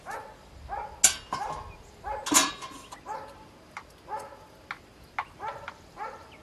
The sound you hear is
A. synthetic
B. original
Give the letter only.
B